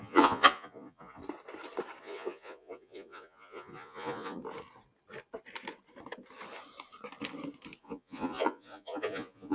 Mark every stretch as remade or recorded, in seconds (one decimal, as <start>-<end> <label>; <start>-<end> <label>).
0.0-1.2 remade; 1.2-2.0 recorded; 2.0-4.4 remade; 4.4-7.8 recorded; 7.8-9.5 remade